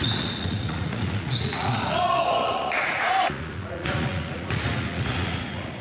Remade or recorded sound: remade